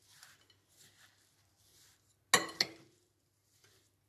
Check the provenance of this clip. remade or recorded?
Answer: recorded